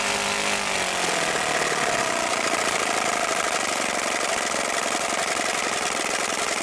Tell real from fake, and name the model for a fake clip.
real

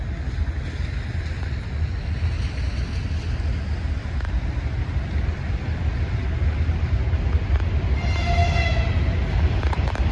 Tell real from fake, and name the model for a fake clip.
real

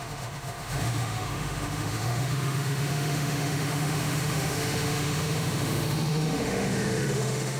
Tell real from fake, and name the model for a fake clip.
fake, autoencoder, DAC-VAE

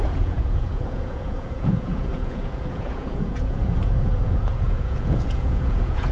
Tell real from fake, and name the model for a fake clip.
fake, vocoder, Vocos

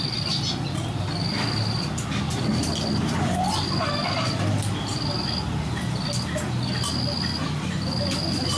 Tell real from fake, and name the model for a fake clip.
real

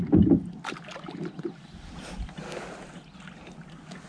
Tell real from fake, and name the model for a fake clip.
real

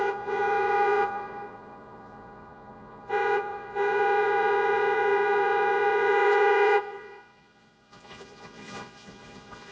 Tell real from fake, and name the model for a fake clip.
fake, vocoder, Vocos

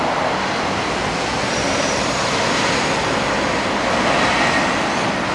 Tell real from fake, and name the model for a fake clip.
real